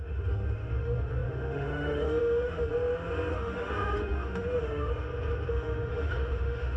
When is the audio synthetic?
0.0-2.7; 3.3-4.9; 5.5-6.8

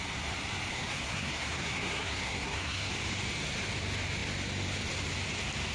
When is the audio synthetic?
0.7-2.9

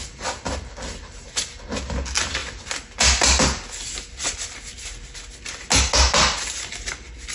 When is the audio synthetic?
none

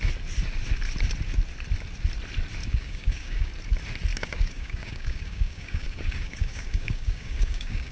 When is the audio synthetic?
2.6-3.5; 4.1-7.9

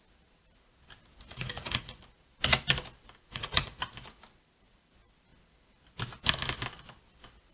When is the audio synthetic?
1.3-2.0; 3.3-3.8